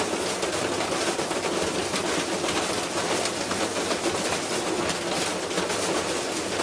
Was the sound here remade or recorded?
recorded